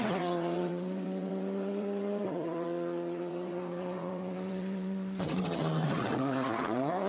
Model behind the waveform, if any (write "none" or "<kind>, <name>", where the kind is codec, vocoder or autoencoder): vocoder, WaveNeXt